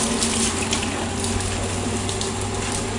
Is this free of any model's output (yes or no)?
yes